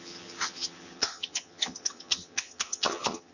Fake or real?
fake